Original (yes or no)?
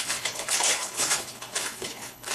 no